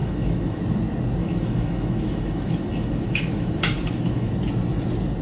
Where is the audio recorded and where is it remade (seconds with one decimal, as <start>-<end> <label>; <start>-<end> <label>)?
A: 0.0-0.6 remade; 0.6-1.2 recorded; 1.2-4.3 remade; 4.3-5.2 recorded